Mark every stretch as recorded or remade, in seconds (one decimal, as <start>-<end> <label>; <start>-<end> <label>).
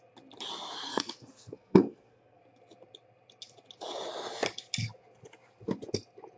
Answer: 0.0-0.9 recorded; 0.9-2.4 remade; 2.4-6.4 recorded